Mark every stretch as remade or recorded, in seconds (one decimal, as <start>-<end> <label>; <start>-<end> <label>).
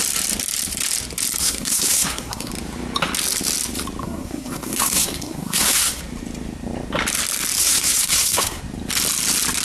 0.0-1.4 recorded; 1.4-2.5 remade; 2.5-4.0 recorded; 4.0-6.0 remade; 6.0-7.6 recorded; 7.6-8.6 remade; 8.6-9.6 recorded